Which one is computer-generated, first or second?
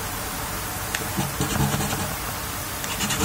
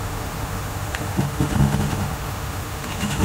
second